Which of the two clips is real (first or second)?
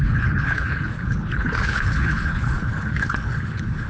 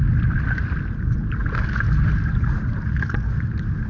second